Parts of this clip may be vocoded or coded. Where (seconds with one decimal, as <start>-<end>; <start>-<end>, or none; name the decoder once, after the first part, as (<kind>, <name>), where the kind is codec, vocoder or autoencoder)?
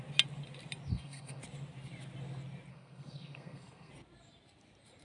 0.9-1.4 (codec, SNAC); 2.7-3.9